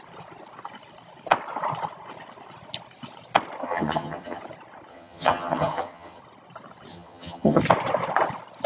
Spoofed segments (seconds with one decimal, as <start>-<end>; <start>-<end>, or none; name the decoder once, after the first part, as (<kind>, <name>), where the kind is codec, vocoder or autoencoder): 3.6-4.4 (vocoder, HiFi-GAN); 4.9-6.2; 6.9-7.6